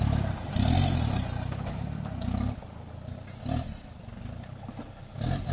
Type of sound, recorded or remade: recorded